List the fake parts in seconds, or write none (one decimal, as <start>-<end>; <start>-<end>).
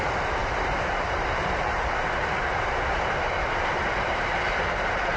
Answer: 0.0-5.2